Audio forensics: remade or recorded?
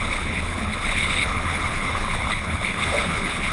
remade